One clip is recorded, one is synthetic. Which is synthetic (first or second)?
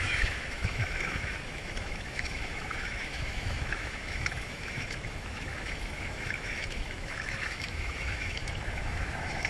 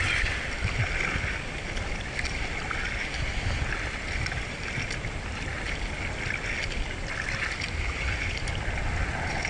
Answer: first